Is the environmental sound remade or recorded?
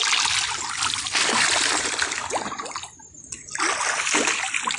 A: recorded